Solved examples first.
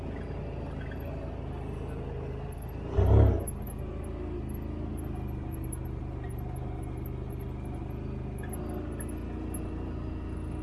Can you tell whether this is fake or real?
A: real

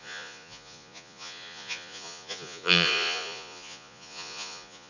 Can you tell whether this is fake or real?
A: fake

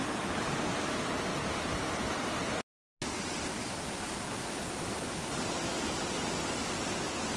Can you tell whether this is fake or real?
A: real